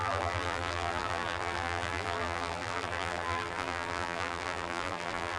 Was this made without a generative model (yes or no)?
no